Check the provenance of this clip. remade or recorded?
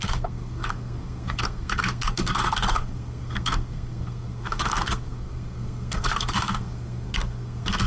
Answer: remade